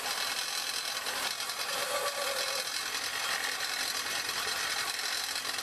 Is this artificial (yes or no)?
no